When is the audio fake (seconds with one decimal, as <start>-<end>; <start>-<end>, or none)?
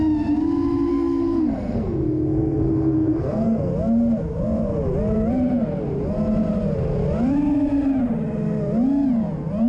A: 0.9-3.7